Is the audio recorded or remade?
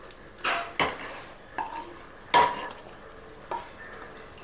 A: recorded